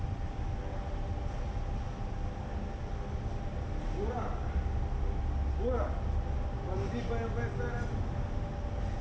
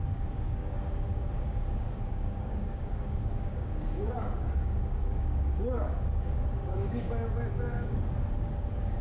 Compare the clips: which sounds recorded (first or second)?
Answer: first